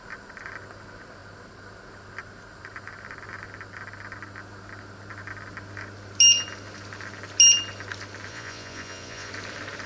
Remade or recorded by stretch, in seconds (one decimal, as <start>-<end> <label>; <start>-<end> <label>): 0.0-8.3 recorded; 8.3-9.3 remade; 9.3-9.9 recorded